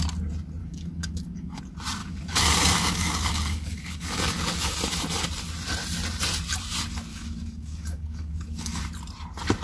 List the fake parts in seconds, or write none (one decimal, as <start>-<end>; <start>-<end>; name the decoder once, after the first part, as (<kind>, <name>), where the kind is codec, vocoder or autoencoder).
0.6-1.6 (codec, DAC); 2.0-4.7; 7.1-8.8